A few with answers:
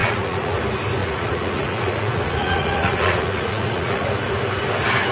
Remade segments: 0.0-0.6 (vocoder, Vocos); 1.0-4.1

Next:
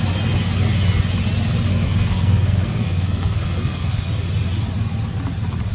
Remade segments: 1.7-4.0 (codec, SNAC)

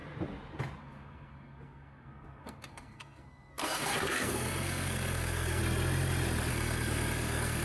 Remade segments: 0.8-5.6 (codec, SNAC); 6.5-7.6

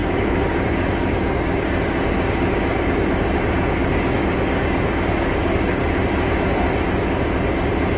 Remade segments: 0.0-5.8 (codec, DAC)

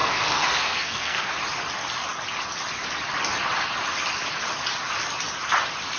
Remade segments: 0.0-1.3 (codec, SNAC)

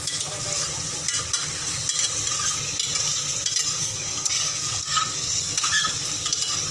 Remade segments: 3.8-5.9 (codec, SNAC)

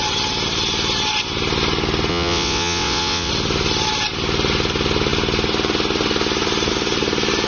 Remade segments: 2.1-3.3 (vocoder, WaveNeXt)